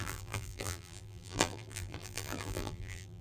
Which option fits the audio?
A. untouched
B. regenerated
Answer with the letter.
B